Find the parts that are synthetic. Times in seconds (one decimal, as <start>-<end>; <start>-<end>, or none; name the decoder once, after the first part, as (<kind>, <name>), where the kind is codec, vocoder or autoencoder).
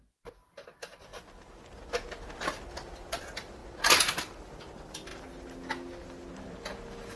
none